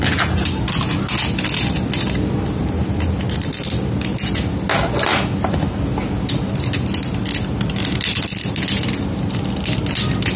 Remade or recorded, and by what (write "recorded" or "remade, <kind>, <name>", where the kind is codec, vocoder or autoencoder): recorded